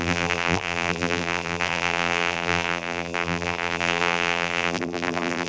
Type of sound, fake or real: fake